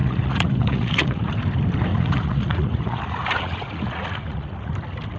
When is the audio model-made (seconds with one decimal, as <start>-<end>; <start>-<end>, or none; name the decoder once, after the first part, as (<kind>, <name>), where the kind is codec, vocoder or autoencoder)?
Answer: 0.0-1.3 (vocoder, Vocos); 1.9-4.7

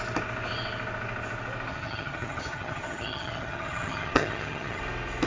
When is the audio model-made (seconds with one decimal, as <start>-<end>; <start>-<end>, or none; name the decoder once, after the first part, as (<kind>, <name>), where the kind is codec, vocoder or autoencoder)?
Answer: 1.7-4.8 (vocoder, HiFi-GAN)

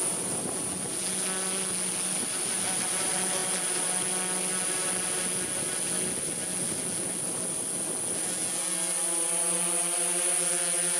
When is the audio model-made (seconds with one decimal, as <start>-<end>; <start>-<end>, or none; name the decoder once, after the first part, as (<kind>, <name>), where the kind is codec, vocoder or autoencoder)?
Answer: none

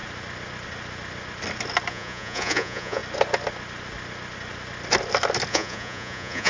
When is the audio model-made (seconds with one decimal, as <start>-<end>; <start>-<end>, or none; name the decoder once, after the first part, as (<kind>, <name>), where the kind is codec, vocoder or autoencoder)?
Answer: 1.9-3.0 (vocoder, Vocos); 5.5-6.5